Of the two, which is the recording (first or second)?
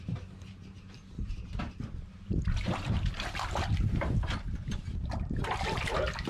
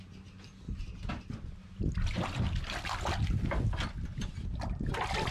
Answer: second